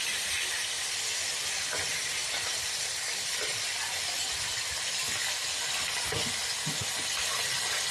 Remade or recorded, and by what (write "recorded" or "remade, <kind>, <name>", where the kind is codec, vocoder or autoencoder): recorded